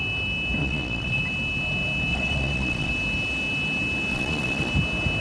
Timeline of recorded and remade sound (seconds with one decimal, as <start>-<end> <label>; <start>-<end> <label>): 0.0-0.6 recorded; 0.6-1.2 remade; 1.2-2.1 recorded; 2.1-2.9 remade; 2.9-4.1 recorded; 4.1-4.7 remade; 4.7-5.2 recorded